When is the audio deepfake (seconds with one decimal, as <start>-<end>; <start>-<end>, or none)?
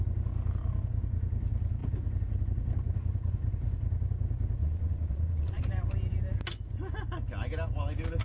4.6-5.6